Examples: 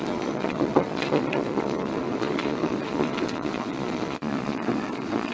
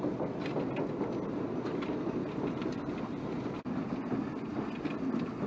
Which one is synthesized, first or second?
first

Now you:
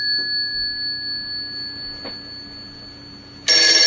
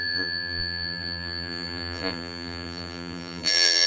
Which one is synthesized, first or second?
second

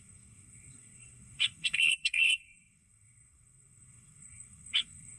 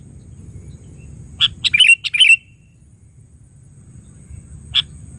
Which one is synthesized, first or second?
first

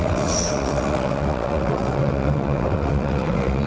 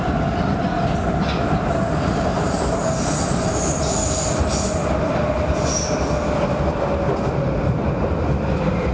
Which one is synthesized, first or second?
first